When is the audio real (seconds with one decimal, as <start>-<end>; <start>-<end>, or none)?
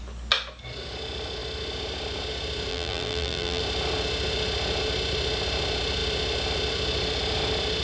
0.0-2.7; 3.6-7.8